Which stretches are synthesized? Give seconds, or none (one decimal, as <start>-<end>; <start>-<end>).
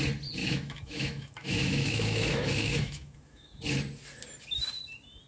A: 0.4-3.6